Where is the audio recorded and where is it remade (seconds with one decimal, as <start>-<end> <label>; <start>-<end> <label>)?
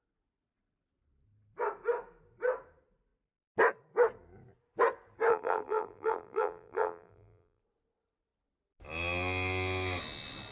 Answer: 0.0-5.3 recorded; 5.3-7.6 remade; 7.6-10.5 recorded